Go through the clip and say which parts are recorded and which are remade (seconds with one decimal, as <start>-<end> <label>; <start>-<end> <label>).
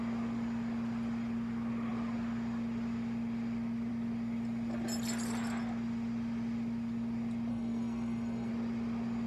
0.0-7.5 recorded; 7.5-8.5 remade; 8.5-9.3 recorded